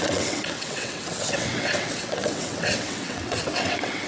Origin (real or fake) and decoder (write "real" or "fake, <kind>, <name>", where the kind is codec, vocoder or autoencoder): fake, vocoder, WaveNeXt